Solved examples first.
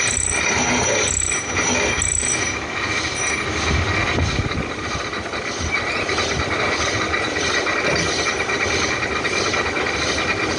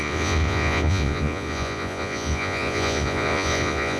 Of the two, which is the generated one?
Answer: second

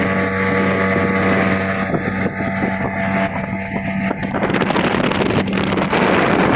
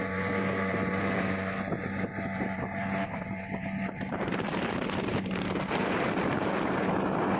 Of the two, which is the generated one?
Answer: second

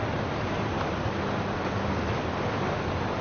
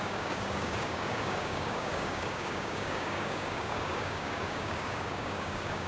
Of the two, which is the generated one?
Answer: second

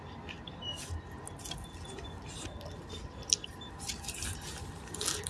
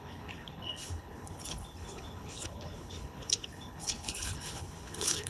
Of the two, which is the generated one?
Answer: second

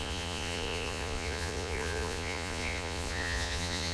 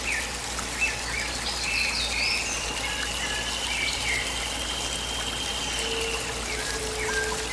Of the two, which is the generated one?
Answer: first